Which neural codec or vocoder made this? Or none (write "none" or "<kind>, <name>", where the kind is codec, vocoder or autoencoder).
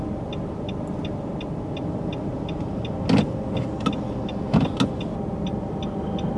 none